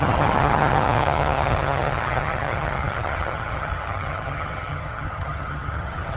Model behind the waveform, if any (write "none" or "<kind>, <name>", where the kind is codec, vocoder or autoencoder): vocoder, HiFi-GAN